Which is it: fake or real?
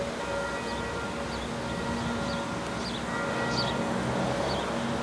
real